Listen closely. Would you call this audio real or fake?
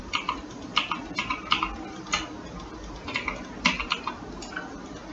real